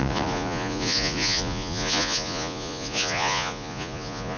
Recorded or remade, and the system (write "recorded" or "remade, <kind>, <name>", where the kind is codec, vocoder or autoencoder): remade, vocoder, Vocos